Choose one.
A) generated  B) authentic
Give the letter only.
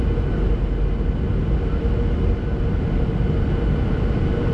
B